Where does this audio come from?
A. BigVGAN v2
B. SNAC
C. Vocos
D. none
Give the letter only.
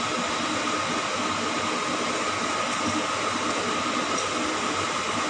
D